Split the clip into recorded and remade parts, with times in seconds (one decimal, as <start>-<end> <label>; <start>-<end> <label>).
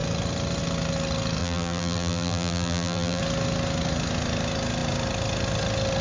0.0-1.4 recorded; 1.4-3.2 remade; 3.2-6.0 recorded